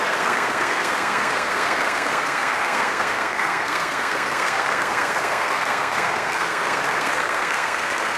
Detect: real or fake fake